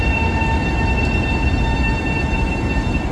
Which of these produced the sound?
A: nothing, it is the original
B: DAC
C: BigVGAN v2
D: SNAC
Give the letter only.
A